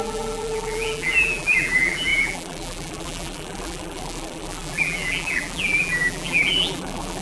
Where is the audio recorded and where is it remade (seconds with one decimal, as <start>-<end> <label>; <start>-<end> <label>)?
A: 0.0-7.2 remade